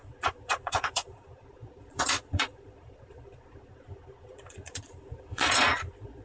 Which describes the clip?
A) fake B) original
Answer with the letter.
A